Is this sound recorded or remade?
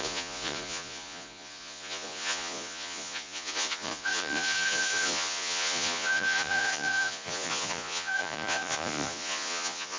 remade